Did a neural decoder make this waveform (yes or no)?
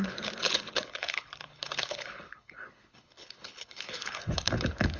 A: yes